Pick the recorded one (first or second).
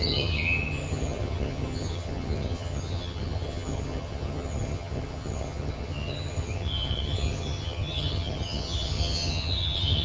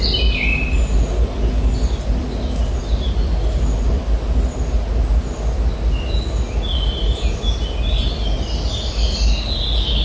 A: second